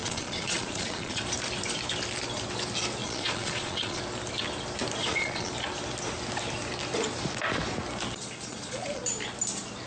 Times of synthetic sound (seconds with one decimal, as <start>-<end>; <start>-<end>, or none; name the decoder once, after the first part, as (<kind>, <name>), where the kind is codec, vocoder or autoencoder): 0.0-1.2 (vocoder, Vocos); 3.0-4.0; 5.0-5.5; 8.2-9.0